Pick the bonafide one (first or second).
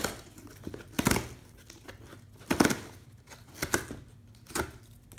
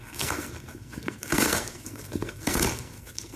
first